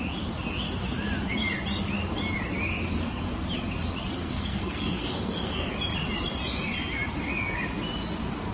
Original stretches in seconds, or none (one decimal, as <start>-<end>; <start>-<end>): 0.0-4.2; 5.7-8.5